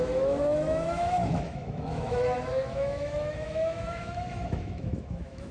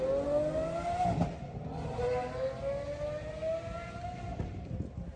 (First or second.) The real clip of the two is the second